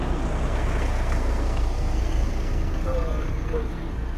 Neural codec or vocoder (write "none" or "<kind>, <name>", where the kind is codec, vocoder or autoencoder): codec, SNAC